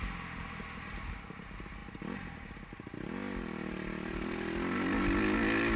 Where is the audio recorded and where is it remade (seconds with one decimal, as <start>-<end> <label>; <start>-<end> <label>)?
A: 0.0-5.8 recorded